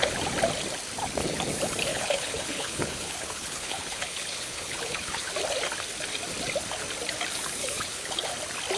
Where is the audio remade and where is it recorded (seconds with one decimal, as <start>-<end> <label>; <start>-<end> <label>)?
0.0-1.9 recorded; 1.9-5.3 remade; 5.3-7.6 recorded; 7.6-8.3 remade; 8.3-8.8 recorded